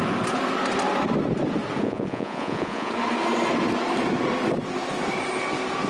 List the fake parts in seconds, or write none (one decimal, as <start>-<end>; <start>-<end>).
1.8-2.9